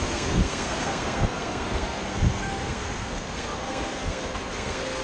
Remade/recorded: remade